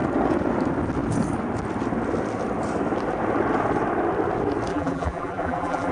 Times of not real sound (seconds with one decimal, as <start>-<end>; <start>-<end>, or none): 4.7-5.9